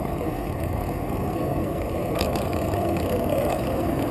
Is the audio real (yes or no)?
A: no